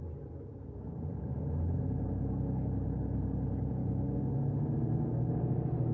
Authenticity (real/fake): real